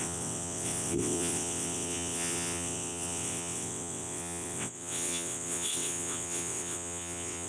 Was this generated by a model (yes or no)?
yes